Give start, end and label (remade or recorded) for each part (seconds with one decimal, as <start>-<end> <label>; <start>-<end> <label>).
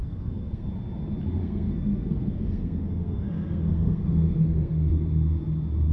0.0-0.7 remade; 0.7-1.4 recorded; 1.4-4.9 remade; 4.9-5.9 recorded